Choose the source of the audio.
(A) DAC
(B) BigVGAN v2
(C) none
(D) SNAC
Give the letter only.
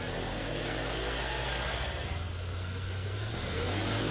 D